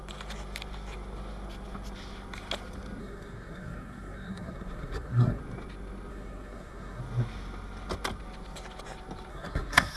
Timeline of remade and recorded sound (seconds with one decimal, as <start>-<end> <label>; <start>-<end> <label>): 0.0-3.0 recorded; 3.0-5.4 remade; 5.4-6.1 recorded; 6.1-7.0 remade; 7.0-9.3 recorded; 9.3-10.0 remade